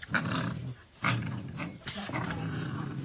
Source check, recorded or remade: remade